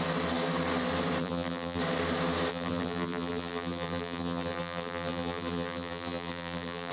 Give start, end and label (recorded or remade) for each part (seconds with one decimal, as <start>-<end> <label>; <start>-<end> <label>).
0.0-1.2 recorded; 1.2-1.8 remade; 1.8-2.5 recorded; 2.5-6.9 remade